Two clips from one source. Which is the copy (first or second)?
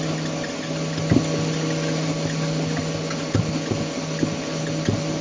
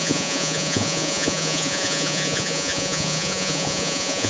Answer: second